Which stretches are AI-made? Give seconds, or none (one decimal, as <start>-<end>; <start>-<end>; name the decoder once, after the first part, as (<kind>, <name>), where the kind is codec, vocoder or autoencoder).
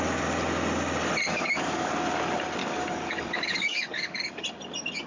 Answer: 1.3-1.9 (codec, DAC); 2.6-4.3